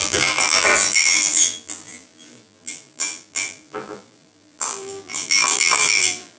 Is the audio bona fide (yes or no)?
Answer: no